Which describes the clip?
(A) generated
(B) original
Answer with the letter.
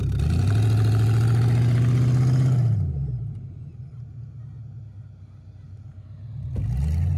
B